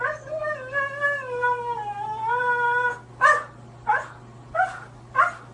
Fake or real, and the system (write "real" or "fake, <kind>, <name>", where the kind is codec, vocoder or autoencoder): real